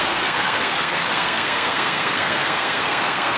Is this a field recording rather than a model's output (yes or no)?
no